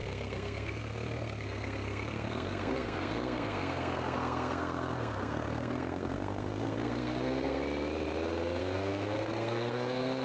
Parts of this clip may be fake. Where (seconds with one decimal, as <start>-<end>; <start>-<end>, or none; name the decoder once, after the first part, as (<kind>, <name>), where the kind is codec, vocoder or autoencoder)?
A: 0.0-7.6 (codec, SNAC); 8.6-10.2